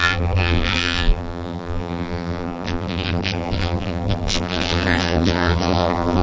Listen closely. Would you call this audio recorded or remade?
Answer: remade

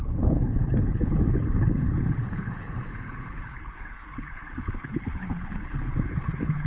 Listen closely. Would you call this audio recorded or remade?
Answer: remade